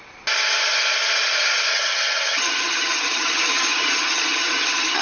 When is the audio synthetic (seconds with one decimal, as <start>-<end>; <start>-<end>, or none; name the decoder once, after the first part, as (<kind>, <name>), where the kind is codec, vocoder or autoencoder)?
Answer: 1.7-5.0 (vocoder, HiFi-GAN)